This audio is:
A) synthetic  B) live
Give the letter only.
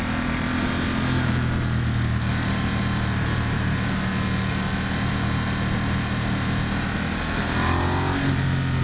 B